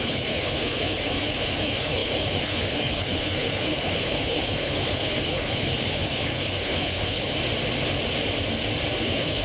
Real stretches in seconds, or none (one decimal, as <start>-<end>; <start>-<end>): 7.3-9.0